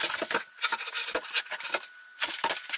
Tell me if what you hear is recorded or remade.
recorded